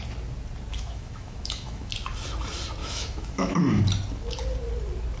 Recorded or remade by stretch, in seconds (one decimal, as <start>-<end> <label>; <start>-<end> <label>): 0.0-0.7 recorded; 0.7-1.9 remade; 1.9-2.8 recorded; 2.8-3.6 remade; 3.6-5.2 recorded